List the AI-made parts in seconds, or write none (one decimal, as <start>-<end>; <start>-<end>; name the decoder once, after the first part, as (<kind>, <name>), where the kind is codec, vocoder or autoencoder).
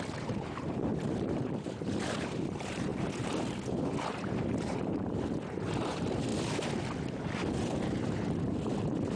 0.0-6.3 (vocoder, BigVGAN v2); 7.5-9.2